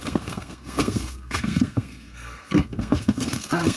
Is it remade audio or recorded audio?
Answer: remade